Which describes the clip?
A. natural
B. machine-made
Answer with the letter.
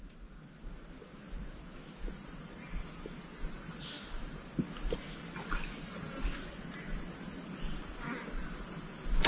A